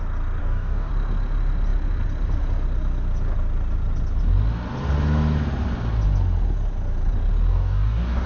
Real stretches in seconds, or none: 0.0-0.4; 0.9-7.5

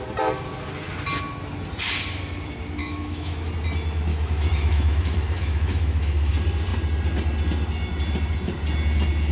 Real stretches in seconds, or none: 0.0-2.8; 3.5-4.1; 6.3-9.3